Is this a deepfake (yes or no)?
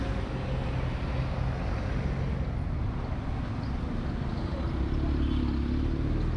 no